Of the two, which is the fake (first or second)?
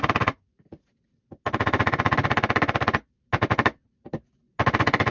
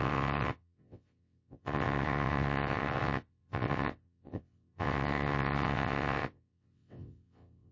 second